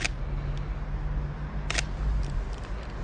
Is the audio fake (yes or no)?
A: no